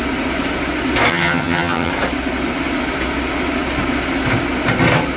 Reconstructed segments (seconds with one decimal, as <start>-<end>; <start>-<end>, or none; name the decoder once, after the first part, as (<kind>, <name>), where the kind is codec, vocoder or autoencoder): 1.1-1.9 (vocoder, HiFi-GAN)